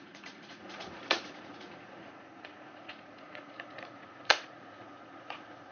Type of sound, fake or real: fake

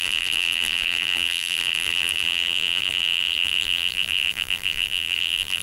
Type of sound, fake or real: fake